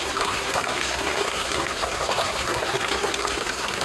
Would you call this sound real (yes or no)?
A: no